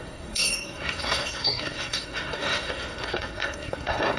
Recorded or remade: remade